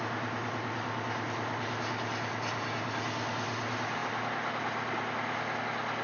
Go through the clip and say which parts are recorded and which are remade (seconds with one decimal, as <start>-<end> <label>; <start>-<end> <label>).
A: 0.0-6.0 recorded